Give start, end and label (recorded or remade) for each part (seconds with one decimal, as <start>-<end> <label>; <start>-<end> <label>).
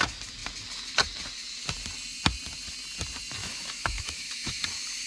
0.0-3.4 recorded; 3.4-4.6 remade; 4.6-5.1 recorded